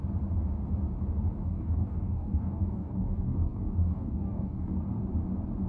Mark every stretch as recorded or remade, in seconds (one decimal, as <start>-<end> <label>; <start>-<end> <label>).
0.0-1.4 recorded; 1.4-4.8 remade; 4.8-5.7 recorded